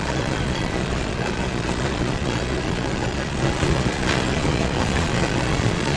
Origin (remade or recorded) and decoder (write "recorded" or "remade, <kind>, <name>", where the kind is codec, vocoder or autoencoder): remade, vocoder, Vocos